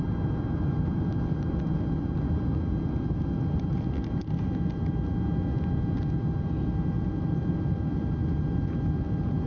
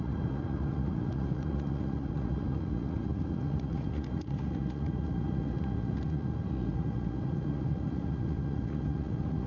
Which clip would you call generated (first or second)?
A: second